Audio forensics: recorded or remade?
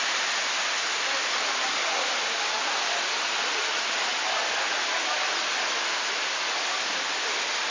recorded